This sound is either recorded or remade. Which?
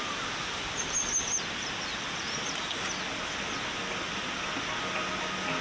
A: recorded